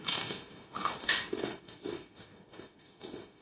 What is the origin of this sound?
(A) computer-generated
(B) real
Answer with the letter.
A